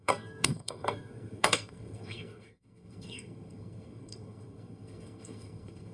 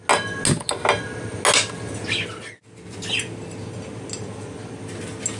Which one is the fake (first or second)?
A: first